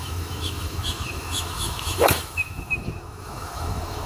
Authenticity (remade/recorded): remade